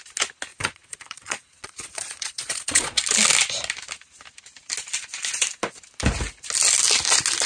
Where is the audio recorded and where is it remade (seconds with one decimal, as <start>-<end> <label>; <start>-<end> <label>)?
0.0-0.5 recorded; 0.5-3.0 remade; 3.0-7.5 recorded